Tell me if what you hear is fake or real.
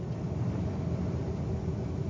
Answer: real